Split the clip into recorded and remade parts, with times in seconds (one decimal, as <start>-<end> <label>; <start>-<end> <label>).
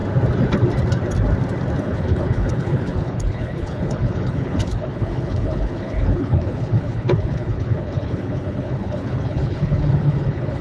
0.0-1.8 recorded; 1.8-10.6 remade